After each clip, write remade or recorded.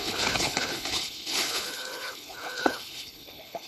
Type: remade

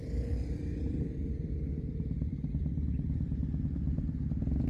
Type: remade